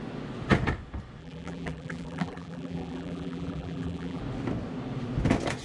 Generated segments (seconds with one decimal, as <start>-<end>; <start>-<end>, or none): 1.2-4.2

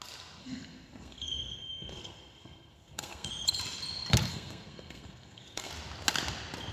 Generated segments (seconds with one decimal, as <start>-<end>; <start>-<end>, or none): 0.4-3.3; 4.3-5.7

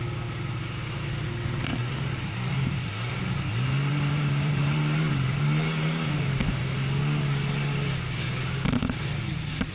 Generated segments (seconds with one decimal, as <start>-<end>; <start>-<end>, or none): 1.8-2.9; 3.9-6.6

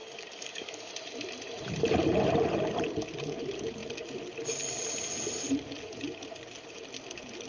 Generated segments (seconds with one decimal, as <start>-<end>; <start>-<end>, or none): 0.0-0.9

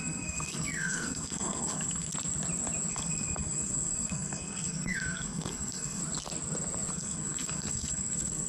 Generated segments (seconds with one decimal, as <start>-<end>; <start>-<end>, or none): 0.0-2.1; 2.9-6.0; 6.9-8.5